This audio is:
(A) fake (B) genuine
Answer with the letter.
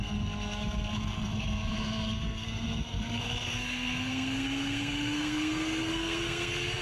A